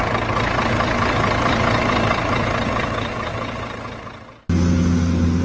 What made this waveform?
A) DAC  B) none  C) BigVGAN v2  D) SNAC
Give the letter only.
B